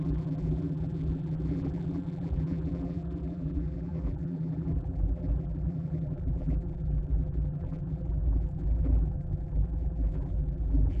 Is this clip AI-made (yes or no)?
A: yes